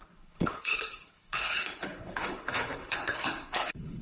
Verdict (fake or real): fake